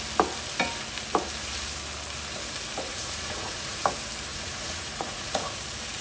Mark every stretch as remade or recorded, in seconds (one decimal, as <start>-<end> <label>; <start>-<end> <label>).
0.0-2.9 recorded; 2.9-3.8 remade; 3.8-4.3 recorded; 4.3-5.6 remade; 5.6-6.0 recorded